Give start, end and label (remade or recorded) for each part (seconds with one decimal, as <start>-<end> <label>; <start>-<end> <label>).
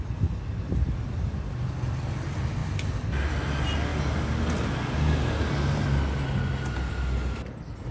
0.0-7.9 recorded